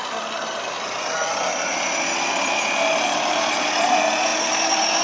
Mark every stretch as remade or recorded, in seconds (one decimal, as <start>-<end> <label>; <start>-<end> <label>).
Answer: 0.0-5.0 recorded